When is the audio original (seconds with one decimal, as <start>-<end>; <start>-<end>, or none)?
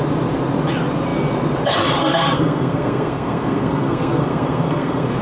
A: 0.0-2.0